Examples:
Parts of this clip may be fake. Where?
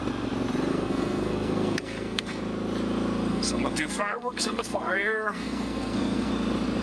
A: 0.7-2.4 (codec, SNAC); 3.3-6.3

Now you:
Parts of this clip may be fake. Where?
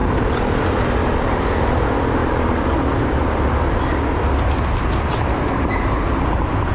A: none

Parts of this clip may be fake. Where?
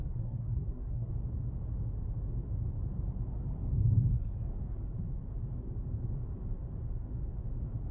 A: 0.0-1.1 (codec, SNAC)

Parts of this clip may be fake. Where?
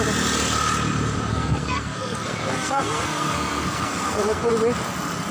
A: 1.3-4.5 (codec, SNAC)